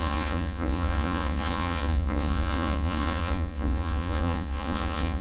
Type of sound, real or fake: fake